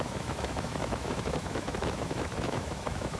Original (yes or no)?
no